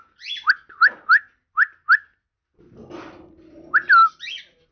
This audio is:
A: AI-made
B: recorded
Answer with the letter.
B